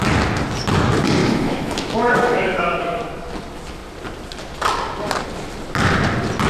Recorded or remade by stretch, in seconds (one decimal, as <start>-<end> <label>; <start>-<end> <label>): 0.0-1.2 recorded; 1.2-3.0 remade; 3.0-6.5 recorded